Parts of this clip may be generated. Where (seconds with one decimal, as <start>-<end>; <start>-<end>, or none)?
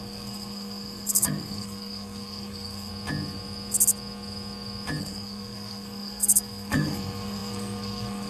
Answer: 0.0-2.9; 5.0-8.3